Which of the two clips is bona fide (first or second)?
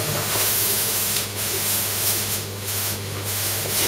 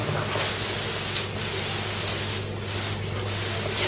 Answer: second